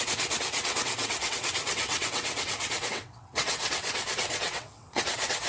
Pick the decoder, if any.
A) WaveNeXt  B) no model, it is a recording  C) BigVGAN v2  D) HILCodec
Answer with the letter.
A